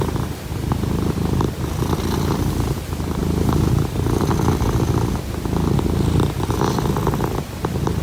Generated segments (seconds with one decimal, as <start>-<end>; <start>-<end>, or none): 0.5-1.6